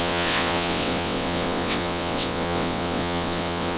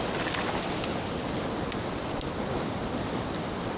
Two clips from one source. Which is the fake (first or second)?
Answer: first